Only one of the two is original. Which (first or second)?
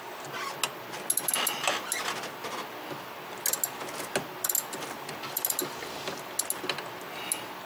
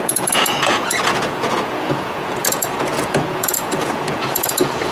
first